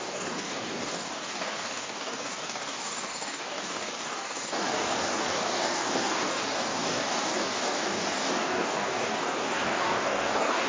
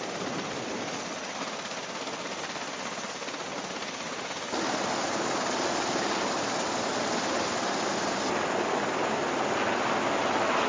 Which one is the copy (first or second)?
first